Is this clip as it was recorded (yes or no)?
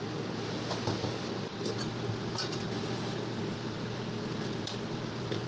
yes